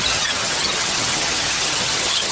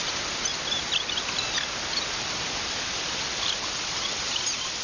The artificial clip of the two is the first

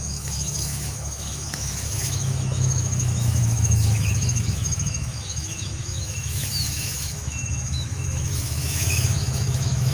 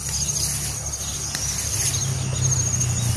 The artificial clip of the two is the first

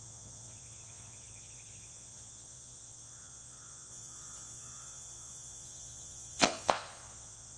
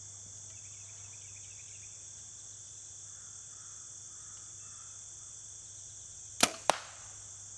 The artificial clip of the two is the first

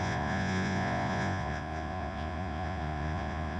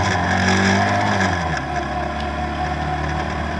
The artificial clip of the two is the first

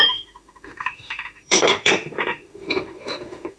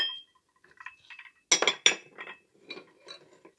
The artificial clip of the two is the first